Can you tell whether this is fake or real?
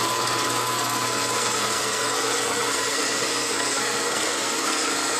fake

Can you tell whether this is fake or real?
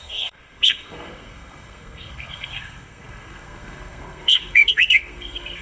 fake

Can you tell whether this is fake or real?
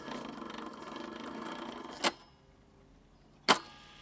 real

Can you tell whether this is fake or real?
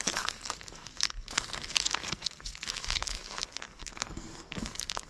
fake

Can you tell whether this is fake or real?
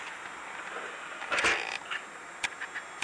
real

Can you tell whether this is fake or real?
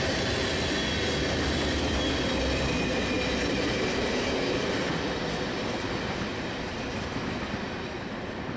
real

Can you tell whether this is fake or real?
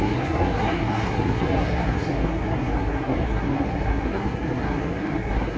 fake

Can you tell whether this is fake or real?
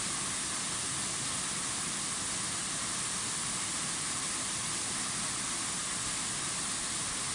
real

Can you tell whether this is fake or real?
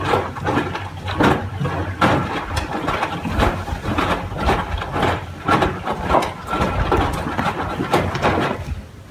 real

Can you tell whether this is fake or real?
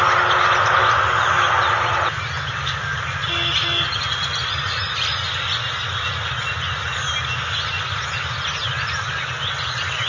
real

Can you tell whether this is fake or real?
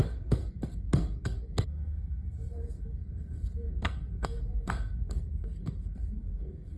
fake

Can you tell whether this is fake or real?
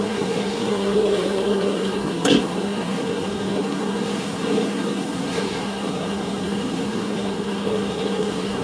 fake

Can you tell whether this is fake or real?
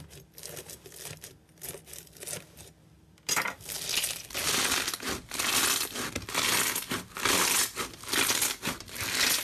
real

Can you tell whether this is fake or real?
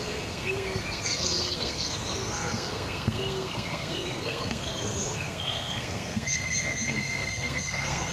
fake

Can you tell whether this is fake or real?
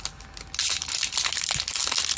real